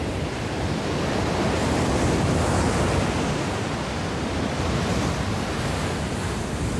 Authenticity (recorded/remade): recorded